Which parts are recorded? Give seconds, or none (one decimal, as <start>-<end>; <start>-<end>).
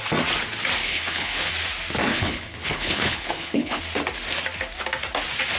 0.0-0.8; 1.5-2.1; 3.8-5.6